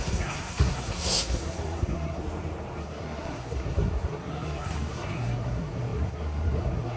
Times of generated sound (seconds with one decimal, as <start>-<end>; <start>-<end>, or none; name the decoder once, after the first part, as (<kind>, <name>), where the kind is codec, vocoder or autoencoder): 0.0-2.2 (codec, SNAC); 2.8-7.0